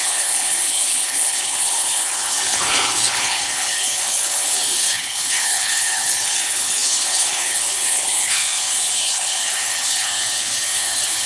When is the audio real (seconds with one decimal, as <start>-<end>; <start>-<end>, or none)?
none